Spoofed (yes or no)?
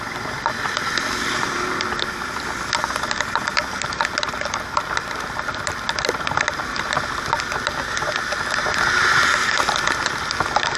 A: no